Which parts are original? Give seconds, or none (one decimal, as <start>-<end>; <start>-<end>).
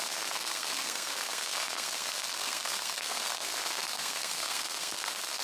none